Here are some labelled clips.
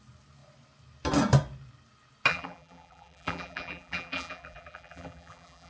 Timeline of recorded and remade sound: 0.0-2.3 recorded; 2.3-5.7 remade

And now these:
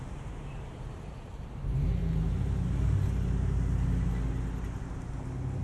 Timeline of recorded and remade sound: 0.0-2.0 remade; 2.0-5.6 recorded

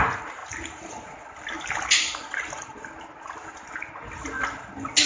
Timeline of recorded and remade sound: 0.0-5.1 recorded

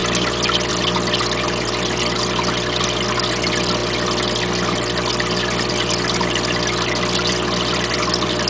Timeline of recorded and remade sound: 0.0-8.5 recorded

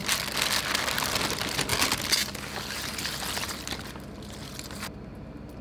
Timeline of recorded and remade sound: 0.0-5.6 recorded